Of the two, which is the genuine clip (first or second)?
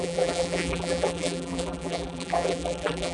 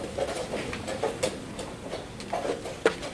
second